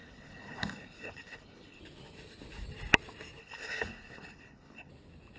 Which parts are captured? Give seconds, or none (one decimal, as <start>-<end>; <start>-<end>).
1.8-3.4; 4.9-5.4